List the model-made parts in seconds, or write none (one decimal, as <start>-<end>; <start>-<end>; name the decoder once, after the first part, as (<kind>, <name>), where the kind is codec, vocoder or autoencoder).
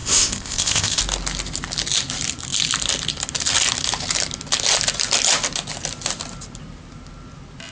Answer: 0.0-1.0 (codec, ZipCodec)